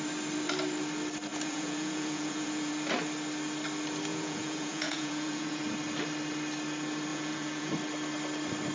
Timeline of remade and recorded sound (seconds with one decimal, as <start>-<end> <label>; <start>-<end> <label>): 0.0-1.3 recorded; 1.3-2.7 remade; 2.7-4.1 recorded; 4.1-5.6 remade; 5.6-7.1 recorded; 7.1-7.7 remade; 7.7-8.7 recorded